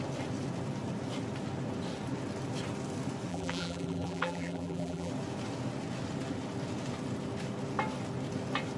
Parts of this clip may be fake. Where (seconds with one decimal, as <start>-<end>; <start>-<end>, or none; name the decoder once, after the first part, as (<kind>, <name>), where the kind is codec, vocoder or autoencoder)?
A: 3.3-5.1 (vocoder, BigVGAN v2)